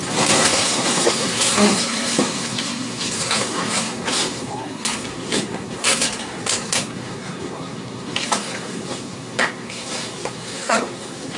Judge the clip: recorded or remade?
remade